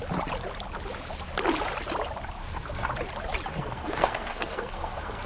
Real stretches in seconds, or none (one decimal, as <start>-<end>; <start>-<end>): 0.0-2.4; 2.9-3.5